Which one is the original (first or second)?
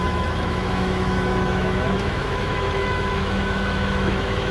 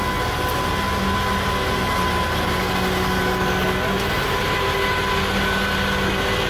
second